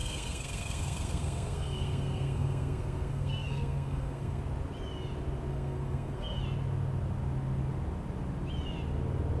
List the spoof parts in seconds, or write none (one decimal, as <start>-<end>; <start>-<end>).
0.0-4.4; 5.5-6.4